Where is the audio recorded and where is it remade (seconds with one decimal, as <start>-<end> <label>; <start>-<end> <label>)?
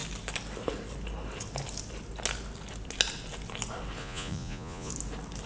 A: 0.0-4.0 recorded; 4.0-4.9 remade; 4.9-5.5 recorded